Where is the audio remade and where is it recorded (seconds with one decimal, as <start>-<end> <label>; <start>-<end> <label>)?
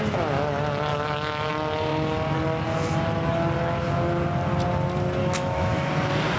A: 0.0-0.9 recorded; 0.9-1.5 remade; 1.5-5.2 recorded; 5.2-5.9 remade; 5.9-6.4 recorded